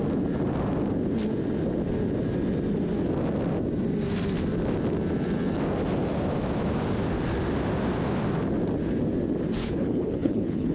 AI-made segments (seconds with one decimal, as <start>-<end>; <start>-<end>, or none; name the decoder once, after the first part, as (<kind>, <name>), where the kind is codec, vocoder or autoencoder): 9.6-10.7 (codec, HILCodec)